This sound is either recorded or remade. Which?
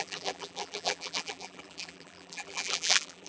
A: remade